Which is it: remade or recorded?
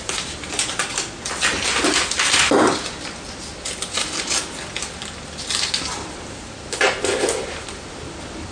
recorded